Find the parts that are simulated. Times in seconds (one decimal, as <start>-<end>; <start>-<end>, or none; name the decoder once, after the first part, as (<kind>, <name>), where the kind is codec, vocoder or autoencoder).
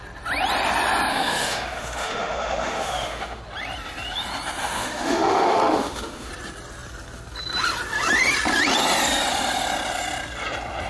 1.1-3.4 (autoencoder, DAC-VAE); 4.6-6.3